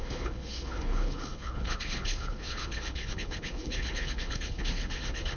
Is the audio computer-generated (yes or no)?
yes